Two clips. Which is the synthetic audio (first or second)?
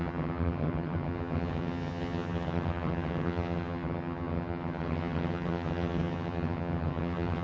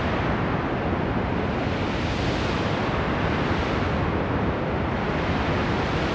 first